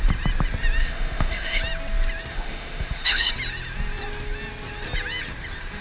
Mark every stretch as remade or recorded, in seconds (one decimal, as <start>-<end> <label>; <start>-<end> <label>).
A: 0.0-0.8 recorded; 0.8-1.6 remade; 1.6-2.3 recorded; 2.3-3.3 remade; 3.3-5.8 recorded